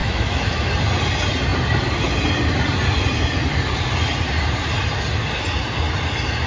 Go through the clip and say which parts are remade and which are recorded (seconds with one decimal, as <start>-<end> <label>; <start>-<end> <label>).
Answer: 0.0-0.7 remade; 0.7-6.5 recorded